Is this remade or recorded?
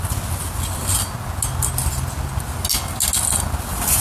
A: recorded